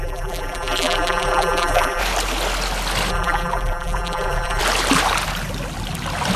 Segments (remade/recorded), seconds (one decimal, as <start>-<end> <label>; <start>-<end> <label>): 0.0-2.0 remade; 2.0-3.1 recorded; 3.1-4.6 remade; 4.6-6.4 recorded